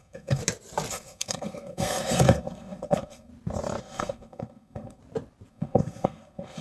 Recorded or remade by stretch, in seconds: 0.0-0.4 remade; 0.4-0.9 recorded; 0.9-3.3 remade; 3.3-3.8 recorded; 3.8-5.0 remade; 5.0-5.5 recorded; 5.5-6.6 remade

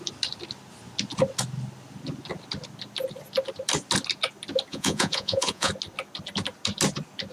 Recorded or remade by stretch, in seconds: 0.0-4.7 recorded; 4.7-5.7 remade; 5.7-7.3 recorded

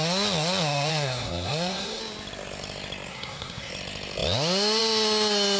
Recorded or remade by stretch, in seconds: 0.0-0.9 recorded; 0.9-2.0 remade; 2.0-3.1 recorded; 3.1-3.7 remade; 3.7-5.6 recorded

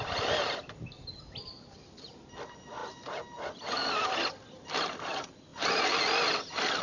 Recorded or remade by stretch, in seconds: 0.0-2.8 remade; 2.8-4.3 recorded; 4.3-6.8 remade

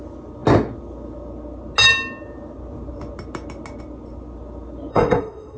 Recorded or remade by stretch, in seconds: 0.0-4.9 recorded; 4.9-5.6 remade

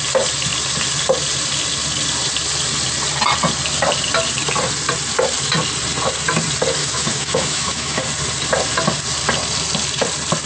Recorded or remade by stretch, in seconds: 0.0-6.8 recorded; 6.8-8.0 remade; 8.0-10.5 recorded

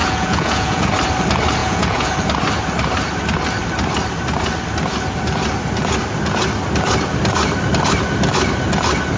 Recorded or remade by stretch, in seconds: 0.0-0.9 remade; 0.9-1.6 recorded; 1.6-2.1 remade; 2.1-9.2 recorded

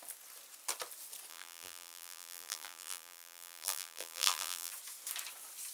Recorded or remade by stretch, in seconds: 0.0-1.3 recorded; 1.3-4.7 remade; 4.7-5.7 recorded